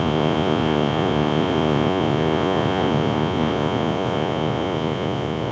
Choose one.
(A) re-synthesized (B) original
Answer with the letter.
A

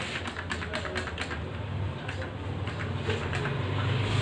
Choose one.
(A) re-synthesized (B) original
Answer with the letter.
B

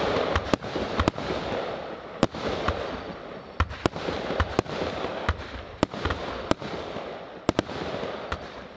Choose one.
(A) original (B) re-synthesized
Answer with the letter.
A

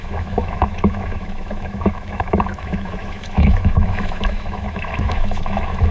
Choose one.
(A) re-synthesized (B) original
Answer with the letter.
A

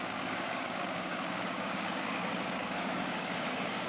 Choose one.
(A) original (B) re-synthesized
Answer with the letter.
B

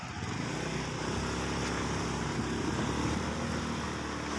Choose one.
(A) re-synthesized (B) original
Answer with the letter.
B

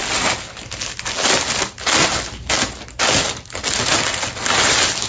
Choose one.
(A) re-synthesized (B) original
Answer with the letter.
B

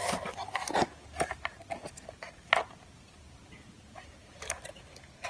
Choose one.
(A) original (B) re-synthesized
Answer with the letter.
A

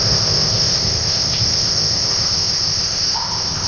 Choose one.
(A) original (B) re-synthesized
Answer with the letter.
B